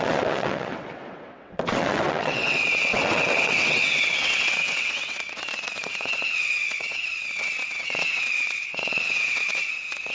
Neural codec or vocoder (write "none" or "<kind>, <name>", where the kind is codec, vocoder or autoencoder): vocoder, WaveNeXt